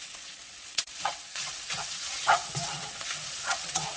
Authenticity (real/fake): fake